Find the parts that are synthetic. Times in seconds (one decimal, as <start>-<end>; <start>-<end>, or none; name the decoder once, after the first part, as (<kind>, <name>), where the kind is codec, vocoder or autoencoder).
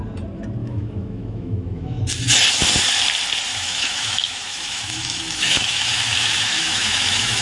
0.6-2.0 (autoencoder, DAC-VAE); 3.5-7.4